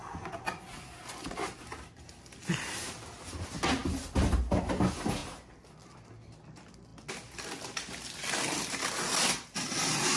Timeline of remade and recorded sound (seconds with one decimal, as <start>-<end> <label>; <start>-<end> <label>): 0.0-10.2 recorded